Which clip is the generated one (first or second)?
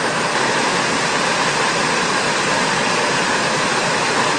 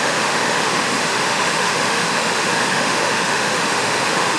second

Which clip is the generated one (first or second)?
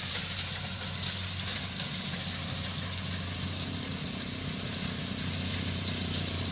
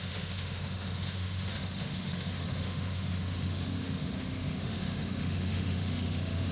second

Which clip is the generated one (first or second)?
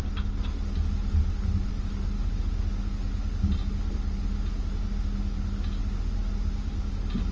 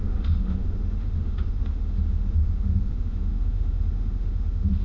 second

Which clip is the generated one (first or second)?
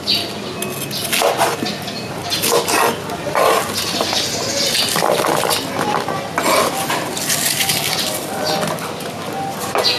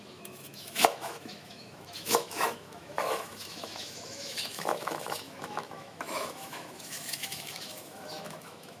second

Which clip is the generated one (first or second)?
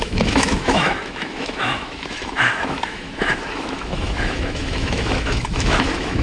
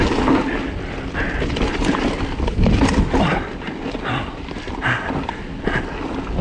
first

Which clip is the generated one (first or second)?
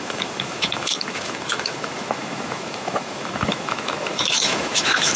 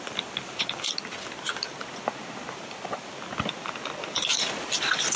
first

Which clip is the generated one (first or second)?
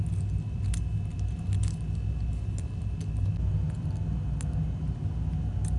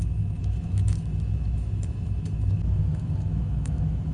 second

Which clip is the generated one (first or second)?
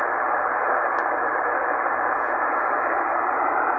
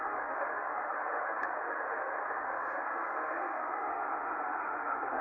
second